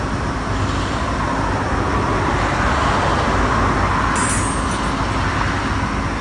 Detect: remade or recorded recorded